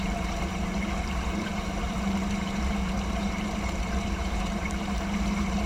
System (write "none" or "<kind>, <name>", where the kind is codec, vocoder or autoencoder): vocoder, BigVGAN v2